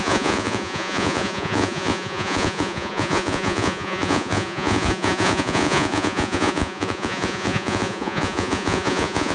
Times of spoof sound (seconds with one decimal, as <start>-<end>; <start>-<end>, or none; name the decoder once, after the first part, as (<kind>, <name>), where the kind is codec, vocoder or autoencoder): 0.0-9.3 (vocoder, Vocos)